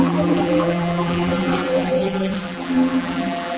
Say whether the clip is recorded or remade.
remade